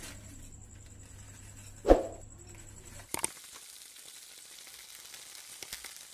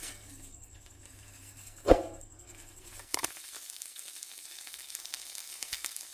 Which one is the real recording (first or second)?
first